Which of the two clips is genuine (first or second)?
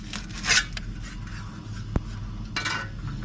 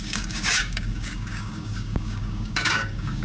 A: first